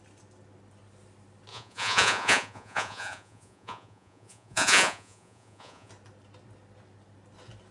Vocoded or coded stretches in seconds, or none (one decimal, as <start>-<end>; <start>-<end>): 1.5-5.9